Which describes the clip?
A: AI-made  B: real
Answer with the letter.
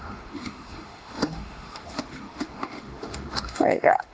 A